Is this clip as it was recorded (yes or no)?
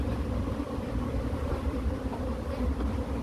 no